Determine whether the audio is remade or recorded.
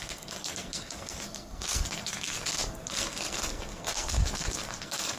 remade